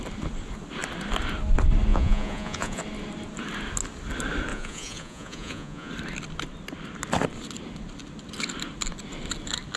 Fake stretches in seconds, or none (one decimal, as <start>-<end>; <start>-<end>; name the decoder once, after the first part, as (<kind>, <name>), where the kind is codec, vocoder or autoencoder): 1.9-2.8 (vocoder, Vocos); 4.5-5.9